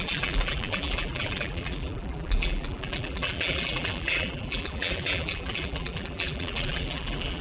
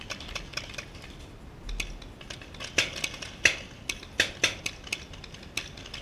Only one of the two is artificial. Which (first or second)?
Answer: first